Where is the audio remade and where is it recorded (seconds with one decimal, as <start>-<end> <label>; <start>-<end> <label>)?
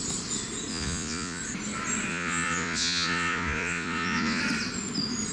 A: 0.0-0.7 recorded; 0.7-1.4 remade; 1.4-2.1 recorded; 2.1-4.4 remade; 4.4-5.3 recorded